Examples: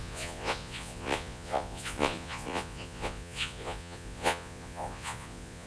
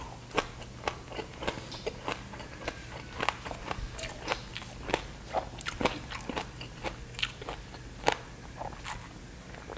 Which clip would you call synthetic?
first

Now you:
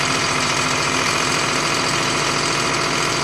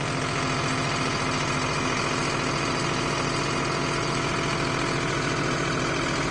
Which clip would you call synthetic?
first